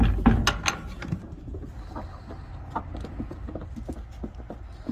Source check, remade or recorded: recorded